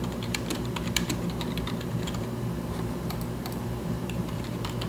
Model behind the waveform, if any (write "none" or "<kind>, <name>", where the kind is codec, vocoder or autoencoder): vocoder, BigVGAN v2